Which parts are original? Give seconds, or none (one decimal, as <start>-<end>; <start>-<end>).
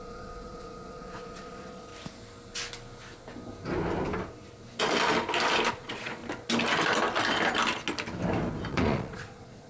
1.9-5.7; 6.2-8.7